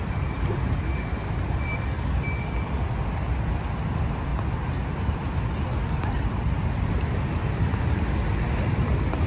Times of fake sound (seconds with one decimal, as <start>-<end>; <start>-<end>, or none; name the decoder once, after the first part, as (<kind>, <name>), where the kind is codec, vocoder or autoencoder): none